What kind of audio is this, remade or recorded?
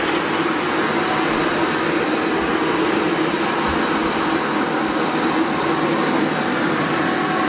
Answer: recorded